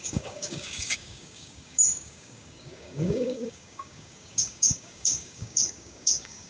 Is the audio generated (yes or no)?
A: yes